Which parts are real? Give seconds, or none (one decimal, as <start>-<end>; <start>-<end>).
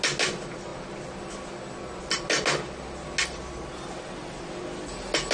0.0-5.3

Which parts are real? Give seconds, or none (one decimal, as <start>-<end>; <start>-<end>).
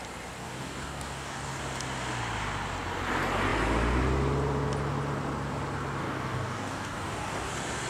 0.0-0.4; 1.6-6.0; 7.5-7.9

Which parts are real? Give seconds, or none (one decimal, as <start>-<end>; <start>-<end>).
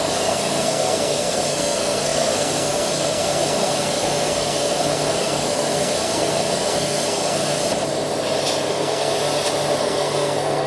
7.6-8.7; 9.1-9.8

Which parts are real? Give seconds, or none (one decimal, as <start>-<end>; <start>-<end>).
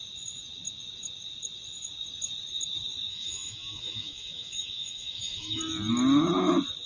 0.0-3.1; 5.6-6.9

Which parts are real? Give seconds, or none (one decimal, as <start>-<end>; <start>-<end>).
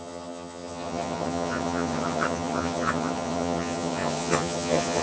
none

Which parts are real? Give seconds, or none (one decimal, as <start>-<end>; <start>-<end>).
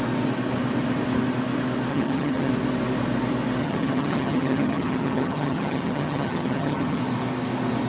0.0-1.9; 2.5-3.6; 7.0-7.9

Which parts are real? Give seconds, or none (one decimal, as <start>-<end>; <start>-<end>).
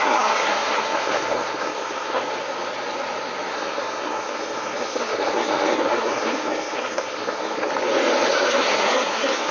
2.2-3.5; 7.7-8.3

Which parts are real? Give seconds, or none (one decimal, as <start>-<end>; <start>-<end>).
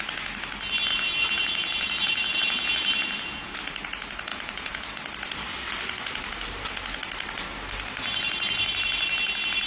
0.0-0.9; 3.5-4.3; 4.9-9.7